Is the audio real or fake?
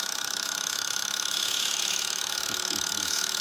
fake